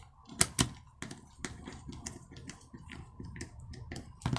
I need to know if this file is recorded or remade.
recorded